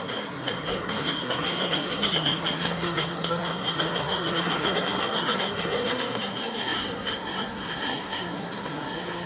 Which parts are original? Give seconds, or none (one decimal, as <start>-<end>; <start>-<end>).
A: none

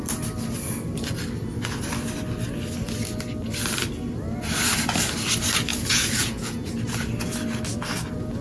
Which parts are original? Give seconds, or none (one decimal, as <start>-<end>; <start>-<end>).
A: 0.0-5.7; 6.7-8.4

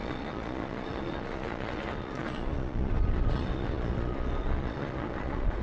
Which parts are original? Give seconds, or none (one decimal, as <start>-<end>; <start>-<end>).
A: none

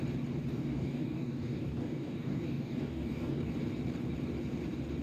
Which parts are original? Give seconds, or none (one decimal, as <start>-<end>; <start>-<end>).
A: 0.0-0.5; 3.5-5.0